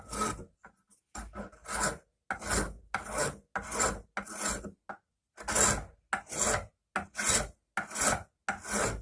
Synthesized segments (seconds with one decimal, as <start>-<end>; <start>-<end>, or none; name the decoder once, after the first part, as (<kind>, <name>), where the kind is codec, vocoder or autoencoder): none